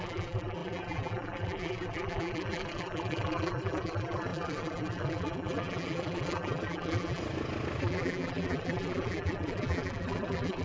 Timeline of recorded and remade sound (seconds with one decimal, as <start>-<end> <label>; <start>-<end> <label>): 0.0-7.2 remade; 7.2-7.8 recorded; 7.8-10.6 remade